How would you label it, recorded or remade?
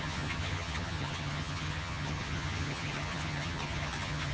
remade